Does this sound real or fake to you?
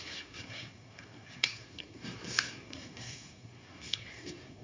fake